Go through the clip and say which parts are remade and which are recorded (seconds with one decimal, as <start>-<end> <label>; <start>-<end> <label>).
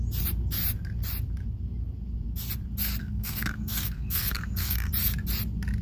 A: 0.0-3.0 recorded; 3.0-4.9 remade; 4.9-5.8 recorded